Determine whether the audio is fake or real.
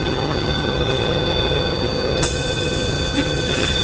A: fake